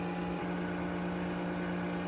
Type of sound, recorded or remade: recorded